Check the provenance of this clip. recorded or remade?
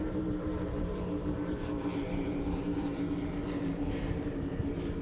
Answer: remade